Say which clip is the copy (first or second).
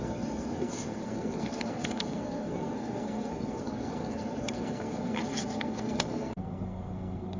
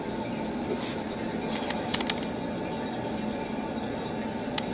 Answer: first